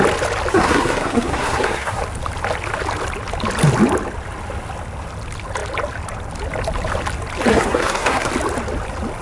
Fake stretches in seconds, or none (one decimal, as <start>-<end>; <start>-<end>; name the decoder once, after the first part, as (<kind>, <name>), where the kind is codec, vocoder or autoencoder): 0.5-2.0 (codec, SNAC); 7.5-8.3